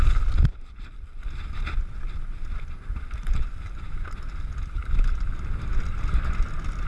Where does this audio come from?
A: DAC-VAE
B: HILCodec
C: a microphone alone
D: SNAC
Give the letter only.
C